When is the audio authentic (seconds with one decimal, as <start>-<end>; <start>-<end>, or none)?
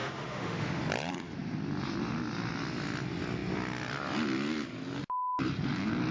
0.8-6.1